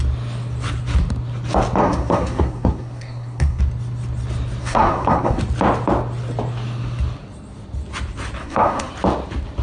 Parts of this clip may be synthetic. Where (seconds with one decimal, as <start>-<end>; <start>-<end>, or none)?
1.8-3.6; 4.6-5.4; 8.4-8.9